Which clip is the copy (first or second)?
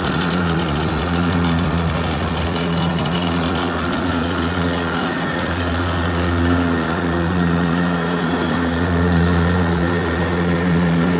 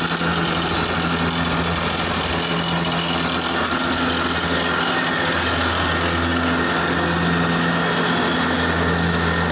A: first